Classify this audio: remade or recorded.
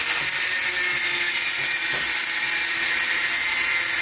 recorded